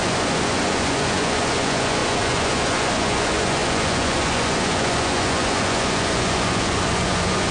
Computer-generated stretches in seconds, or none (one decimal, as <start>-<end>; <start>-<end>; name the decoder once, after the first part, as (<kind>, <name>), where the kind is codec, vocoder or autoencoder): 0.0-7.5 (vocoder, Vocos)